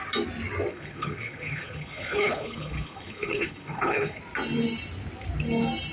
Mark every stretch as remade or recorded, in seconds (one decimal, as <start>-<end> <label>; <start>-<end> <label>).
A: 0.0-0.7 recorded; 0.7-4.2 remade; 4.2-5.9 recorded